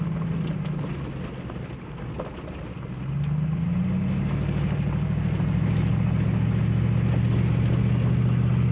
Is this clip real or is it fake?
real